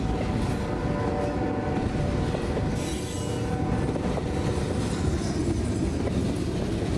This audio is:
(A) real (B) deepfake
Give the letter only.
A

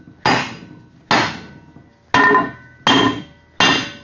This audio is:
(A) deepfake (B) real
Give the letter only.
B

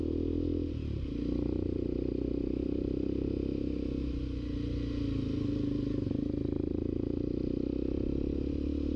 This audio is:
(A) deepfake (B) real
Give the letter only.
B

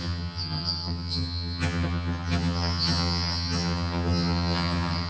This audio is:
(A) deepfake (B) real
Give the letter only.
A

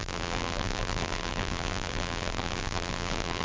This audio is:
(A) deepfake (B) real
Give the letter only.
A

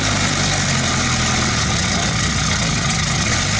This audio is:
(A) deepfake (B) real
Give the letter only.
B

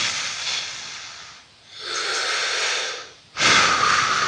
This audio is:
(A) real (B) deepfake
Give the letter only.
A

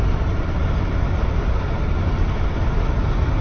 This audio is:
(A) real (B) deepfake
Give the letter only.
A